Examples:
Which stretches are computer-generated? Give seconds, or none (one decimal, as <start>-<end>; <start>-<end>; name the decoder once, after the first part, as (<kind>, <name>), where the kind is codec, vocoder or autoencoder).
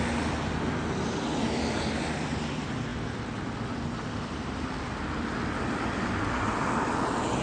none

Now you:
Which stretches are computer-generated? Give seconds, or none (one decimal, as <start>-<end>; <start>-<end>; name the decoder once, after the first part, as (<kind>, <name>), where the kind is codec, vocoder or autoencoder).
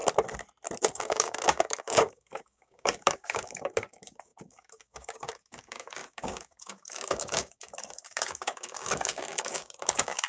0.9-10.3 (codec, DAC)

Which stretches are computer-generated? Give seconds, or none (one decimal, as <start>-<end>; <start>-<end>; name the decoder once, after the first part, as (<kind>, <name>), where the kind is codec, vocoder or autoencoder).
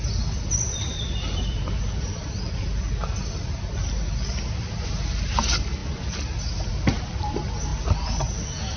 0.0-5.8 (vocoder, BigVGAN v2); 6.7-7.7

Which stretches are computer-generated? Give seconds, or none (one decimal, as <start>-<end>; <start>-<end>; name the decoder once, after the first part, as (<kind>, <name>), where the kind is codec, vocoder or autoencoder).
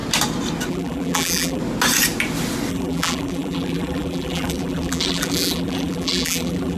0.7-1.6 (vocoder, BigVGAN v2); 2.7-6.8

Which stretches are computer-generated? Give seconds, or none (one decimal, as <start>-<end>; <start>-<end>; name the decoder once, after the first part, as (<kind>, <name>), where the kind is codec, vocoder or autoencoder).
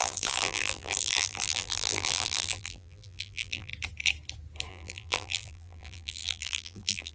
0.0-3.7 (vocoder, BigVGAN v2); 4.7-7.1